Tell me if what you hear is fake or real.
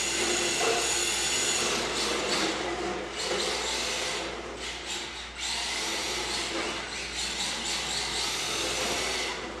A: real